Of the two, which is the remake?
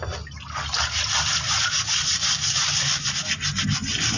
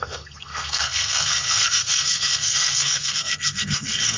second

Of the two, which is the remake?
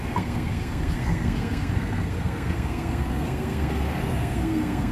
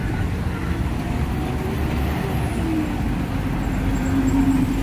first